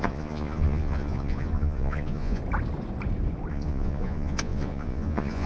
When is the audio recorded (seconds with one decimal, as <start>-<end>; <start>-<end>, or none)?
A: 2.4-3.5